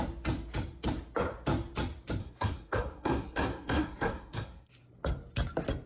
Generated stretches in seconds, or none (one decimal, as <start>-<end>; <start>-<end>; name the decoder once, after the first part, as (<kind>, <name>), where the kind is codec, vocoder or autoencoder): 2.2-4.7 (codec, SNAC)